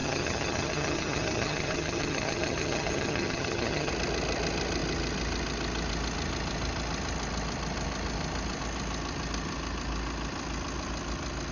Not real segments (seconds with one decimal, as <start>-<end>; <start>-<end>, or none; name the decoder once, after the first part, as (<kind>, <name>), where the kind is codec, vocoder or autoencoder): 0.0-3.9 (vocoder, HiFi-GAN)